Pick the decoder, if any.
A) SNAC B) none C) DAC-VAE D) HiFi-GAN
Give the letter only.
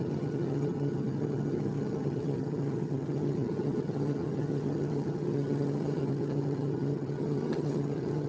D